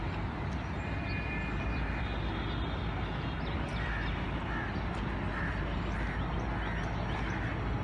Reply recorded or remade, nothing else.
recorded